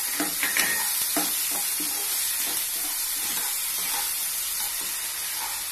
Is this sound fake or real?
real